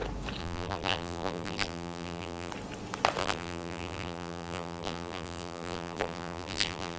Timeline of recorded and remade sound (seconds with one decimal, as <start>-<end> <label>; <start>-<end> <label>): 0.0-0.4 recorded; 0.4-2.5 remade; 2.5-3.2 recorded; 3.2-7.0 remade